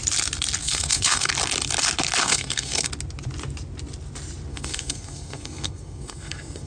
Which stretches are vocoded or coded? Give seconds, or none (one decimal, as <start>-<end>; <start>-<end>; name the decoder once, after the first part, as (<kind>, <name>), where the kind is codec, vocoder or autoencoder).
0.6-1.3 (codec, SNAC); 2.2-2.9; 4.5-6.7